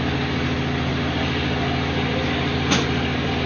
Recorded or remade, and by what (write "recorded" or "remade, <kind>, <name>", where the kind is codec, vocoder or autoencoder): recorded